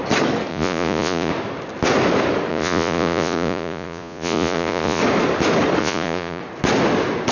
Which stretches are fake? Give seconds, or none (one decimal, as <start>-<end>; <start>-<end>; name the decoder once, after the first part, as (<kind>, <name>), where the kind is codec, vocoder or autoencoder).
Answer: 0.5-1.3 (vocoder, Vocos); 2.5-5.0; 5.8-6.4